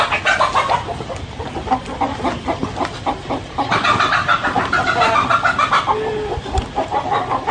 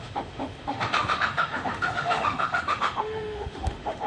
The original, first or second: first